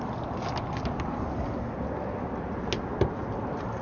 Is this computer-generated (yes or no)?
no